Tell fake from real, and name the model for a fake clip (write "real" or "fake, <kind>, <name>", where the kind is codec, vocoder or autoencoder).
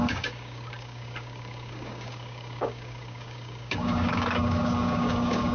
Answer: fake, codec, DAC